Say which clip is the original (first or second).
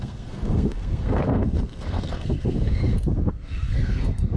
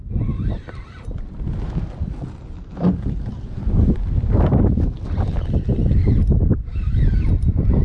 second